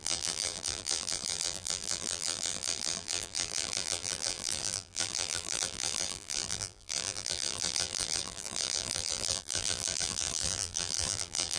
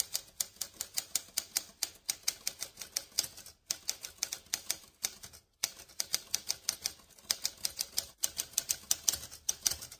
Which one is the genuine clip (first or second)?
second